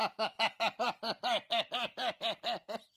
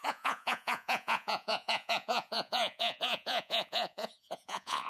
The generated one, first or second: second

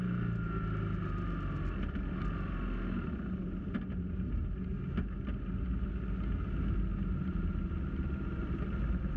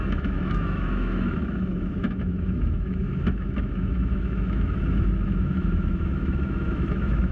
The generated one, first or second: second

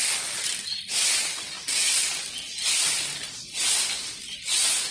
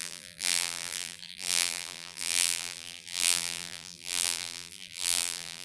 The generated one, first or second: second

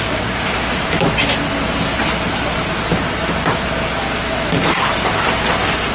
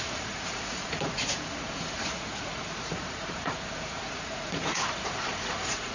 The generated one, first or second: second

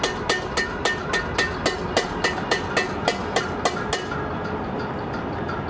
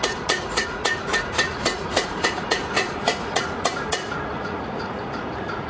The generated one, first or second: second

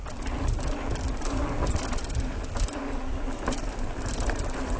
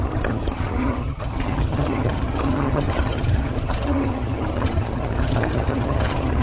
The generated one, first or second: second